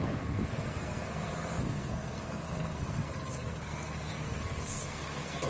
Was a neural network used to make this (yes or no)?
yes